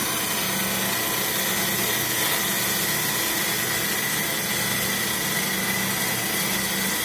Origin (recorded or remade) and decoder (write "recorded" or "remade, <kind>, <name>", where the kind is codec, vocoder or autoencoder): recorded